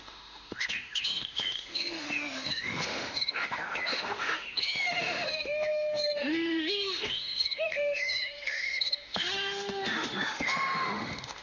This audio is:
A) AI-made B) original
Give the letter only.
A